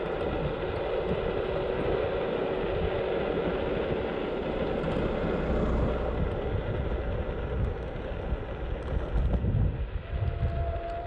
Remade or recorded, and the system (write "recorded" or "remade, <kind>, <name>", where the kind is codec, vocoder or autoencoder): recorded